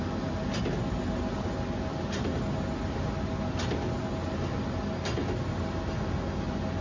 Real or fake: real